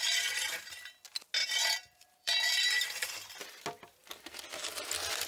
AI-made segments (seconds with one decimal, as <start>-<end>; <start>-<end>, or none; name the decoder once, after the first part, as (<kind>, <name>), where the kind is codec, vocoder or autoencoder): 0.0-0.9 (vocoder, BigVGAN v2); 1.4-3.6